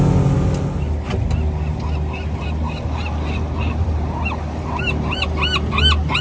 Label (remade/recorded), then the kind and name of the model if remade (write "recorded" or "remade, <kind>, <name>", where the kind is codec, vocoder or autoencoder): recorded